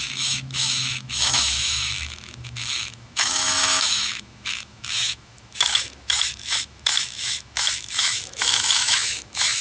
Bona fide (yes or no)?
no